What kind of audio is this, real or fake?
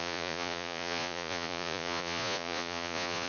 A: fake